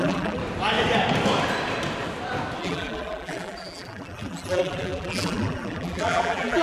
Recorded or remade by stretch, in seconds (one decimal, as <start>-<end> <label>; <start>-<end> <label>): 0.0-0.4 remade; 0.4-2.6 recorded; 2.6-6.6 remade